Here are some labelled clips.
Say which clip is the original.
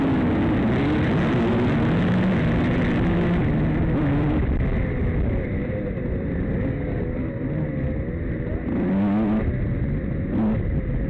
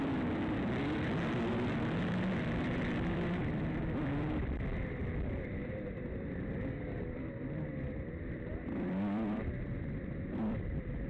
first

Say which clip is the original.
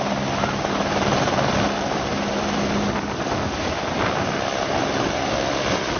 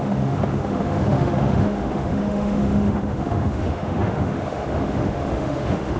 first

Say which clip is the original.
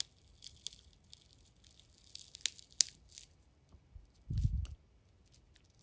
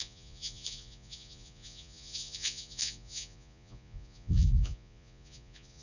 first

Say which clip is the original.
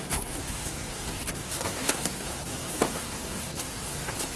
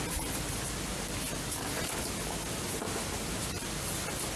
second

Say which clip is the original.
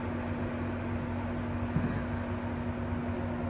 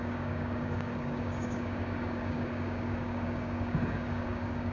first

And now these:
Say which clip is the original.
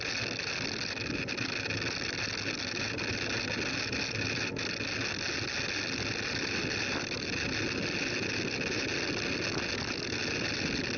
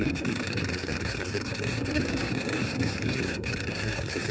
first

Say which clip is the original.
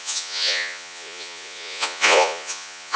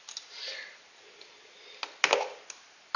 second